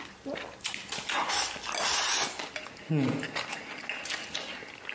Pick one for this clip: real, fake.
real